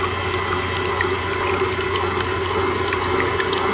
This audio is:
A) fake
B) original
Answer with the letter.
B